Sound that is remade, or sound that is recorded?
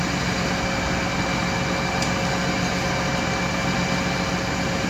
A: recorded